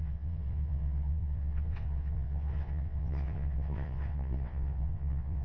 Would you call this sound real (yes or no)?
no